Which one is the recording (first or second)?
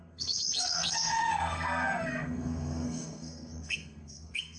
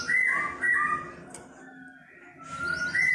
second